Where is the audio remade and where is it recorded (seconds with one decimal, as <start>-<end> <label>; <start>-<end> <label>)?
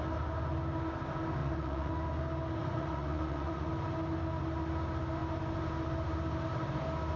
0.0-1.4 recorded; 1.4-1.9 remade; 1.9-2.6 recorded; 2.6-3.7 remade; 3.7-7.2 recorded